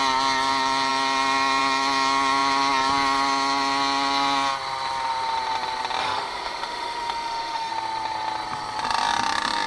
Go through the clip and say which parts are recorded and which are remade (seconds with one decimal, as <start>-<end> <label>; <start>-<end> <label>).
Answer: 0.0-6.0 recorded; 6.0-7.7 remade; 7.7-9.7 recorded